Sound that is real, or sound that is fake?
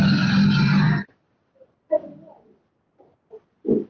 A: real